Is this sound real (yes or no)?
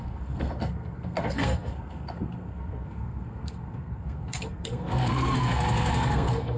no